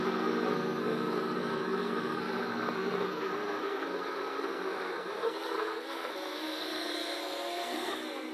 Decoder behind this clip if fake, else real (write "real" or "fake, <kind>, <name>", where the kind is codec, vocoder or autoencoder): fake, codec, SNAC